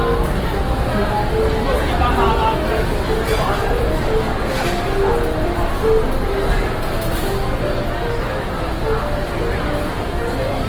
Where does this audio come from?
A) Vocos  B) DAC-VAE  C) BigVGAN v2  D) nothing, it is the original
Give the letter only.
D